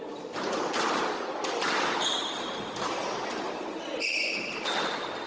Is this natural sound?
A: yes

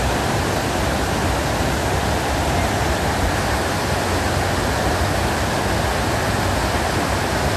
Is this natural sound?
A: yes